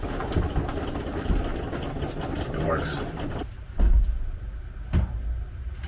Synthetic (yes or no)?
yes